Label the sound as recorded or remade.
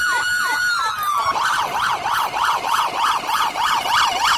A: recorded